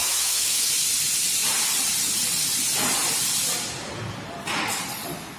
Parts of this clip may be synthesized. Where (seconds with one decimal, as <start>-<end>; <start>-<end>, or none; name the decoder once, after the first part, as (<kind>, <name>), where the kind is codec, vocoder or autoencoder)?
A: 0.0-0.7 (autoencoder, DAC-VAE)